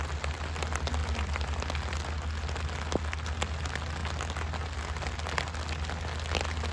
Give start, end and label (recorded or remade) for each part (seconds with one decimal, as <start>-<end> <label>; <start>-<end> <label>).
0.0-6.7 recorded